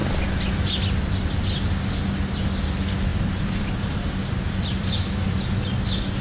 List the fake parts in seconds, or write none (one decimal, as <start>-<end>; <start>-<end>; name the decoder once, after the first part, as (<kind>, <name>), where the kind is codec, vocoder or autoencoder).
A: none